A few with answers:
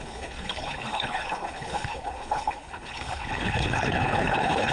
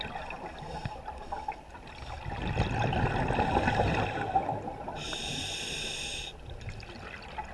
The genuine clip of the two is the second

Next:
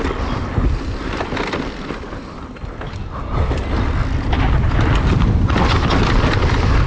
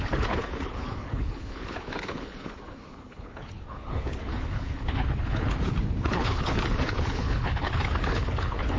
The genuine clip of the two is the first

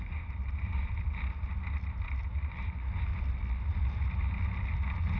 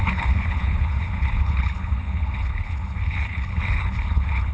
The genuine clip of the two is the first